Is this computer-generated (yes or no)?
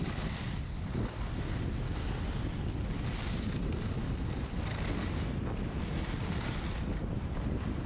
no